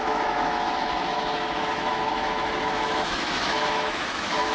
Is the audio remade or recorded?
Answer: remade